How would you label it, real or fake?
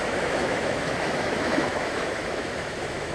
fake